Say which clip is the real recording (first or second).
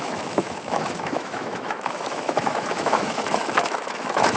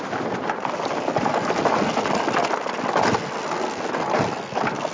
second